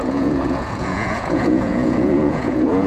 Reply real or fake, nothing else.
fake